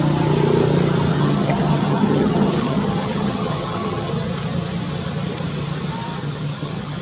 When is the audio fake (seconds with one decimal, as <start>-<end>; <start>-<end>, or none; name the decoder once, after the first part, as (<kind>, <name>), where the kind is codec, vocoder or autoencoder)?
1.1-4.1 (vocoder, HiFi-GAN); 6.2-7.0